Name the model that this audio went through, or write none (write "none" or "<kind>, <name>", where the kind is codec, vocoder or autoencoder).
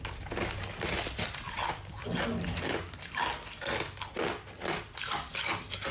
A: none